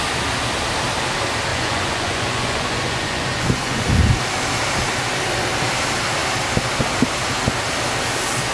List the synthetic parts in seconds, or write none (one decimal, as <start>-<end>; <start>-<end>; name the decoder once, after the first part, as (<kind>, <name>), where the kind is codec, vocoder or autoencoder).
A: 1.5-3.9 (vocoder, Vocos)